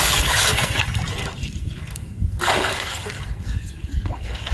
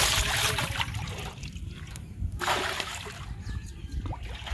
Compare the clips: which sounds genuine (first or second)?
second